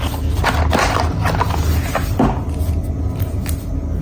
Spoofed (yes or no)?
no